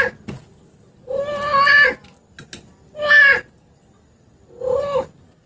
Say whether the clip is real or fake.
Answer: real